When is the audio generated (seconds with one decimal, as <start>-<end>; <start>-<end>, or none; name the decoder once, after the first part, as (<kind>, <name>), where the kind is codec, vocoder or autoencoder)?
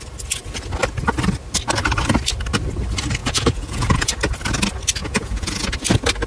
3.2-4.1 (vocoder, Vocos); 5.0-5.7